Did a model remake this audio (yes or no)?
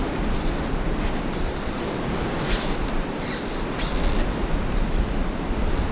no